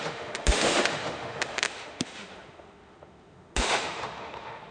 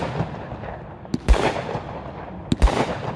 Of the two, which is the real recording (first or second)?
second